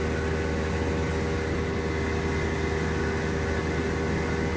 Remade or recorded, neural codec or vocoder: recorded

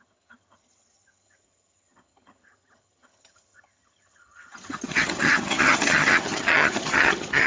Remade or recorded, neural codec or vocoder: remade, vocoder, HiFi-GAN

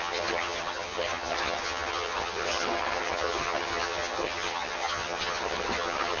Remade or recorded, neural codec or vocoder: remade, vocoder, HiFi-GAN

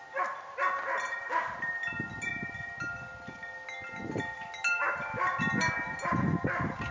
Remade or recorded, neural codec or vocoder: recorded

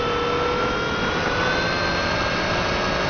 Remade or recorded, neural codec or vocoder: recorded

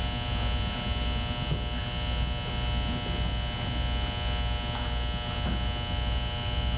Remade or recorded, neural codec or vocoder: recorded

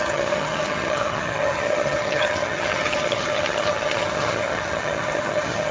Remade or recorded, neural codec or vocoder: remade, vocoder, HiFi-GAN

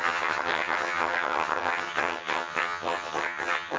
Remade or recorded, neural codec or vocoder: remade, vocoder, HiFi-GAN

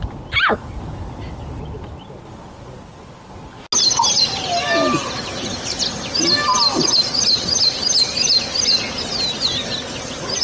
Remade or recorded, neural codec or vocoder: recorded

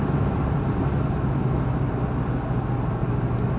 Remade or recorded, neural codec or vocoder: recorded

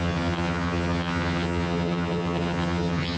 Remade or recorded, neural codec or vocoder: remade, vocoder, HiFi-GAN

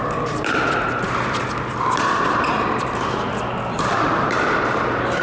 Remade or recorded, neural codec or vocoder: recorded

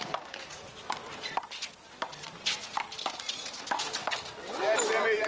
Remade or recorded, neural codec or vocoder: recorded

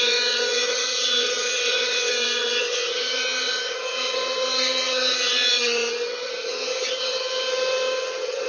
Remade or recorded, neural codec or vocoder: remade, vocoder, HiFi-GAN